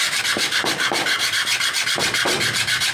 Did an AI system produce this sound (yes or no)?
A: no